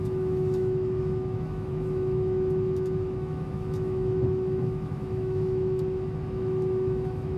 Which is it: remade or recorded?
remade